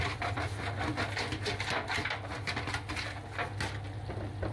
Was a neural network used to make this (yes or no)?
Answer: no